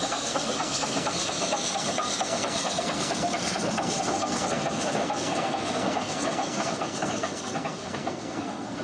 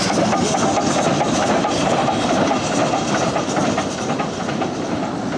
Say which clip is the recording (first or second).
second